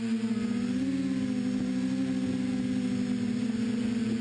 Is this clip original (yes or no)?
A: yes